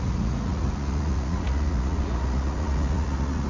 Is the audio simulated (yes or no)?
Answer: yes